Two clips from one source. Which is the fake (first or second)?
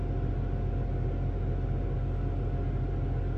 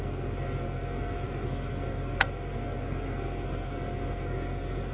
second